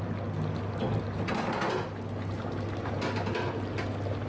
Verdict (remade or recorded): recorded